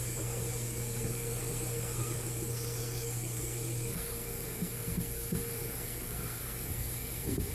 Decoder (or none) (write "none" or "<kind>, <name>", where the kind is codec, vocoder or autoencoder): codec, SNAC